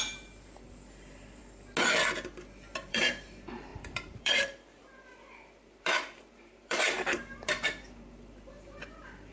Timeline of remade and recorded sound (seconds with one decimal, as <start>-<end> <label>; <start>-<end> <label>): 0.0-1.4 remade; 1.4-2.9 recorded; 2.9-9.3 remade